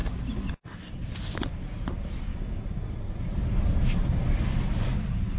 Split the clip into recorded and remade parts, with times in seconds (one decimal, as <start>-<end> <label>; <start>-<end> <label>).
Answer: 0.0-2.3 recorded; 2.3-2.9 remade; 2.9-5.4 recorded